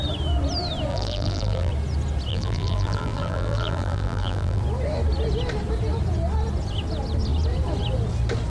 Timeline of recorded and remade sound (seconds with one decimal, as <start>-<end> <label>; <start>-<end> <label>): 0.0-0.9 recorded; 0.9-1.7 remade; 1.7-2.3 recorded; 2.3-4.6 remade; 4.6-8.5 recorded